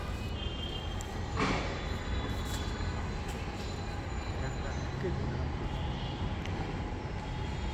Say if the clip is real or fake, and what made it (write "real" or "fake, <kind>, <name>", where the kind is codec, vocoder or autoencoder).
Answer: real